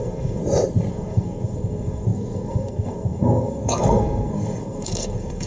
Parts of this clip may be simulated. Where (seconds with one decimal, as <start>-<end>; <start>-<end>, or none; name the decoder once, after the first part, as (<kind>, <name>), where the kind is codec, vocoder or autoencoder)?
0.0-0.4 (codec, SNAC); 0.9-5.5